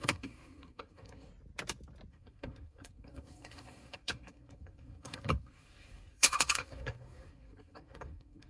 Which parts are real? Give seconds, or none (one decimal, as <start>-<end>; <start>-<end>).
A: 1.3-2.1